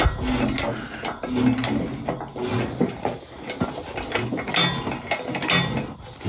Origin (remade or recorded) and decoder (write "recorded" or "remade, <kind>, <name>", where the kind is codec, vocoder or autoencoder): recorded